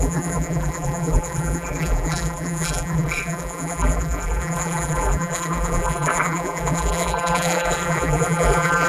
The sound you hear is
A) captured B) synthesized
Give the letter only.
B